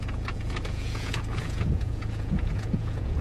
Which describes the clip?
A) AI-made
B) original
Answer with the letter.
A